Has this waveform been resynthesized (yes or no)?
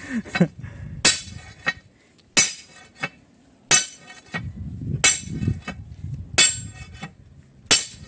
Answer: no